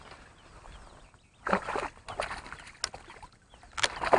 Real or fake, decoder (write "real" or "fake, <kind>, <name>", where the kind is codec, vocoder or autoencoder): real